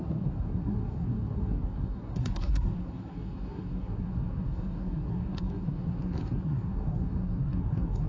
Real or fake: fake